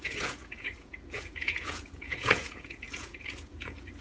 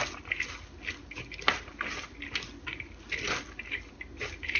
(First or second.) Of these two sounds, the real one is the second